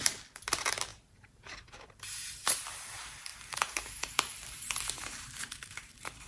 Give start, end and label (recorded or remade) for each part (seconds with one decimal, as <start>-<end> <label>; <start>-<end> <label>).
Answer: 0.0-0.9 recorded; 0.9-2.4 remade; 2.4-3.3 recorded; 3.3-6.3 remade